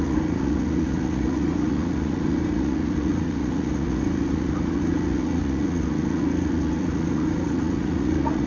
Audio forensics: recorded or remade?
remade